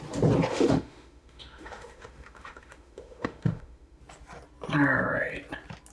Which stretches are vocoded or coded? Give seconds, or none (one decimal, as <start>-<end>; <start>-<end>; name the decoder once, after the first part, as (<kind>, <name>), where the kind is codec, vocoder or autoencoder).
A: 0.5-4.0 (autoencoder, DAC-VAE)